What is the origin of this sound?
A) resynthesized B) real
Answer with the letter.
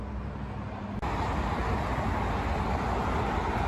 B